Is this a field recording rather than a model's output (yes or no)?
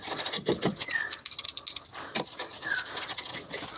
yes